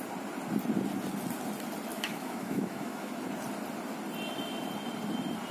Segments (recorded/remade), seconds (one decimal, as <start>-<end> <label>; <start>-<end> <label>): 0.0-1.9 recorded; 1.9-3.1 remade; 3.1-5.5 recorded